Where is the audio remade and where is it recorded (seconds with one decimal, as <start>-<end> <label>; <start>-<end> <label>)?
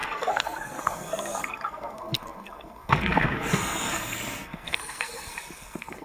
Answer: 0.0-6.0 remade